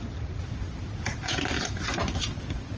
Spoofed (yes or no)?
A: no